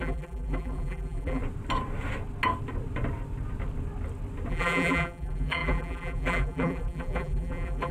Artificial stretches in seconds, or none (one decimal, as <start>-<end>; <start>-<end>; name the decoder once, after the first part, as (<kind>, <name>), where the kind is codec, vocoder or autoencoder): 0.0-1.4 (vocoder, BigVGAN v2); 4.5-7.9